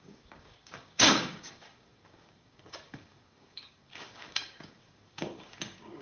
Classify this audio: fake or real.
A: fake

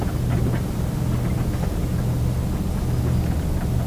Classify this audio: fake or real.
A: real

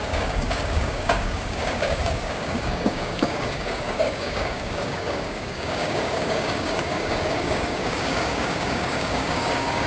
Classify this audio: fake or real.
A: fake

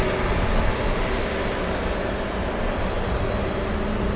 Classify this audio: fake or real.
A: real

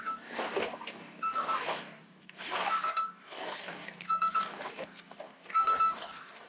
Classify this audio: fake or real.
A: fake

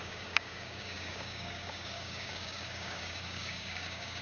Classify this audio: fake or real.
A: fake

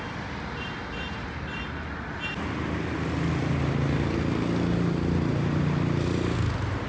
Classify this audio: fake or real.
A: real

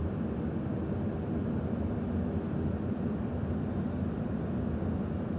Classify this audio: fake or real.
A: real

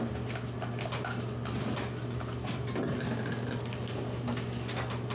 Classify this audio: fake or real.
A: real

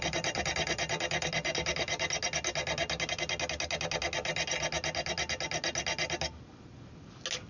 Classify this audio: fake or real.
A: real